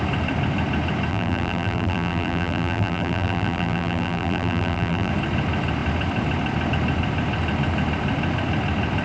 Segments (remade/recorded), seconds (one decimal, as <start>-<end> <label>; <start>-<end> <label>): 0.0-1.1 recorded; 1.1-5.1 remade; 5.1-9.0 recorded